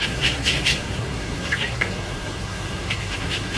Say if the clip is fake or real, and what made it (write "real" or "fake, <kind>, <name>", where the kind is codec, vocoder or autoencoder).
fake, codec, SNAC